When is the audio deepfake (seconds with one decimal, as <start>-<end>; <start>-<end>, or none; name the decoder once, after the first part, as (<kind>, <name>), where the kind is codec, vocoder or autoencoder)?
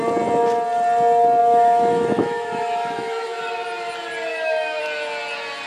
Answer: 1.4-3.4 (autoencoder, DAC-VAE); 4.3-4.8